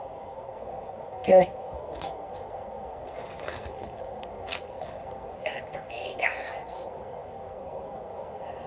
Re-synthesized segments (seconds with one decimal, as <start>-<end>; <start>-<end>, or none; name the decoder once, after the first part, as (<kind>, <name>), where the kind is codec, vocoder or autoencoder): 0.0-8.7 (codec, SNAC)